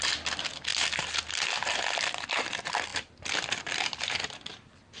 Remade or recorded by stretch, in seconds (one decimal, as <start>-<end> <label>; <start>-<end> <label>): 0.0-5.0 recorded